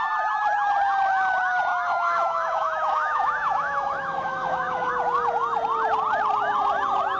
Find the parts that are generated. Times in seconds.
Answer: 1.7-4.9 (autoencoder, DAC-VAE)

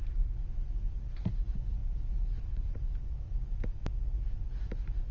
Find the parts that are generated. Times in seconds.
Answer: none

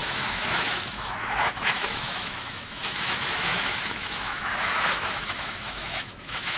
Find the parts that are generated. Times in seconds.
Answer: 0.0-6.6 (autoencoder, DAC-VAE)